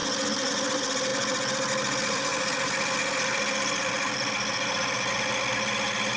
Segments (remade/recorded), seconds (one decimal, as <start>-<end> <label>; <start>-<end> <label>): 0.0-6.2 recorded